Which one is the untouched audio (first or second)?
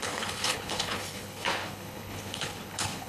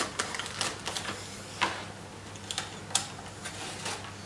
second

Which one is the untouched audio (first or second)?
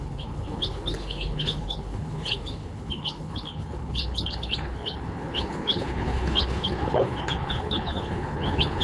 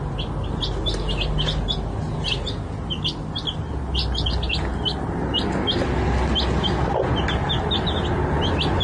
second